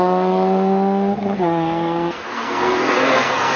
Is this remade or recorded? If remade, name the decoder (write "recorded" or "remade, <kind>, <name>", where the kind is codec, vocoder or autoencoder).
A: remade, codec, SNAC